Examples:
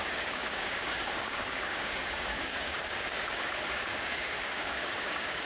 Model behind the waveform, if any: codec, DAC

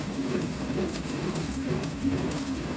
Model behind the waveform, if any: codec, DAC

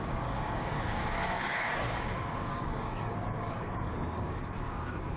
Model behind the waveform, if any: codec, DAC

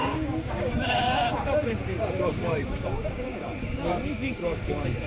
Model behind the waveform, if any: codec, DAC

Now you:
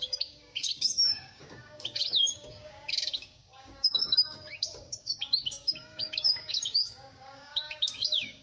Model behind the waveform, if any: codec, DAC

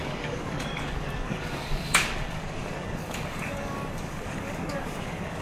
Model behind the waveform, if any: codec, DAC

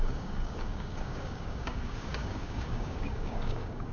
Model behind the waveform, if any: codec, DAC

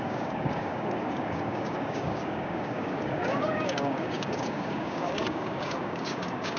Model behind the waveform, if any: codec, DAC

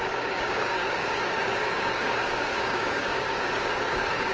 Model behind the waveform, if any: codec, DAC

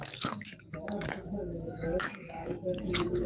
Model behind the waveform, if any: codec, DAC